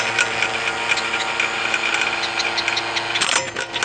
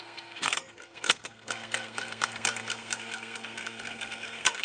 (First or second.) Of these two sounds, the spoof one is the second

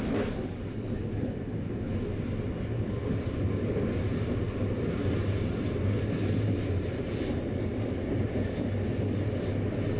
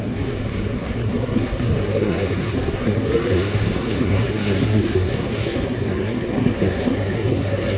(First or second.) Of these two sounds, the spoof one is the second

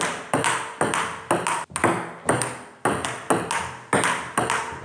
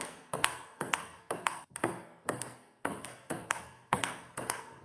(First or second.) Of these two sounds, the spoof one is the second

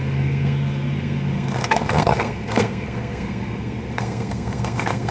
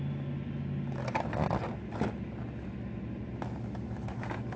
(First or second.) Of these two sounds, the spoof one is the first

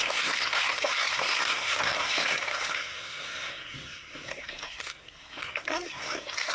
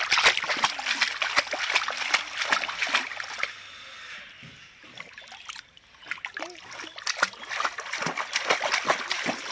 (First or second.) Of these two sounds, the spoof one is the first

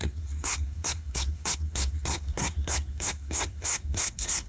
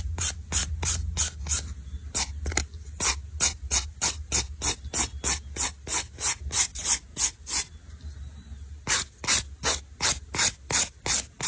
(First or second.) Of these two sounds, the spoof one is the first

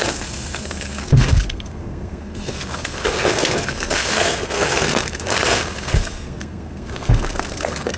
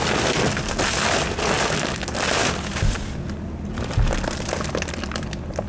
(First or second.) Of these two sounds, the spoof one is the first